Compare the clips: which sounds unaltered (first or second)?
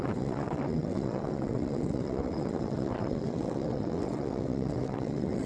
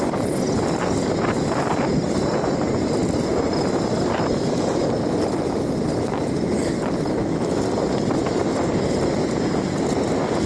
second